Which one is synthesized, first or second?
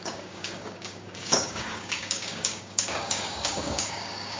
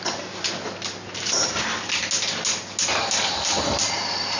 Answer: first